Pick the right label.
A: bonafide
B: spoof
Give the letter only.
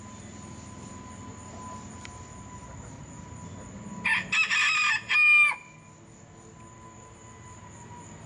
A